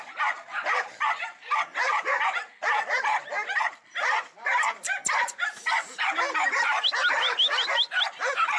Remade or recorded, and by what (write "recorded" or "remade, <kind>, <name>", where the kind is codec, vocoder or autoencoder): recorded